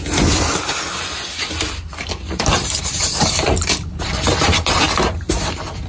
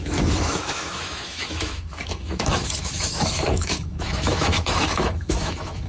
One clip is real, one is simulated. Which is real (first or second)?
first